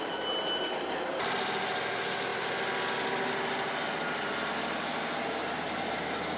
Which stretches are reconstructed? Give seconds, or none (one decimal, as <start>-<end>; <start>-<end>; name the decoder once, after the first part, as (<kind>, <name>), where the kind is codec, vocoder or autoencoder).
none